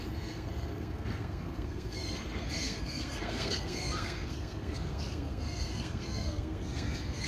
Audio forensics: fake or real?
fake